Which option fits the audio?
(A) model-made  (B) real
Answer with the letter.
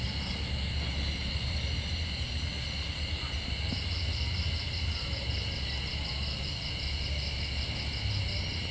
B